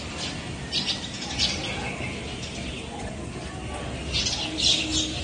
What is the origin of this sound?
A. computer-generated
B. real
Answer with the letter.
B